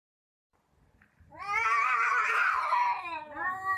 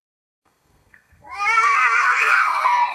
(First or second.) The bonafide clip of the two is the first